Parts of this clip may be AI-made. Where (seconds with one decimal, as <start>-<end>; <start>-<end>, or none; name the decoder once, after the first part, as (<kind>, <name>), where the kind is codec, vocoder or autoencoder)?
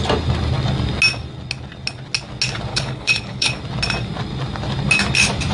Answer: 2.7-3.6 (codec, HILCodec)